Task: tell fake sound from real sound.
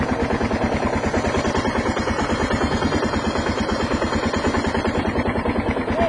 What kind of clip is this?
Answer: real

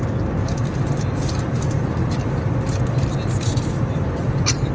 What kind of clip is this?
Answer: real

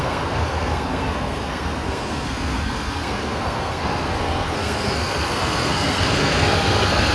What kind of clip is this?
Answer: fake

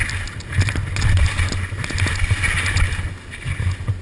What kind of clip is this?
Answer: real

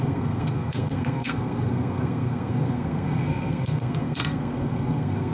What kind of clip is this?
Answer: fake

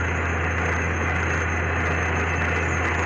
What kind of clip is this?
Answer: real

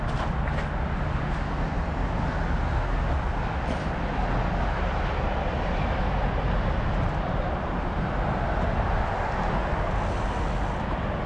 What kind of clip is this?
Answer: real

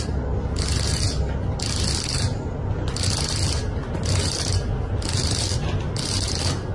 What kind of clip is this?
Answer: real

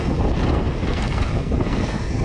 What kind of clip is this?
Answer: fake